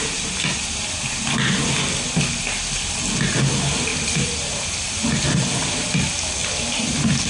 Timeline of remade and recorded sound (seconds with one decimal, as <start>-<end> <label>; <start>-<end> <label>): 0.0-7.3 recorded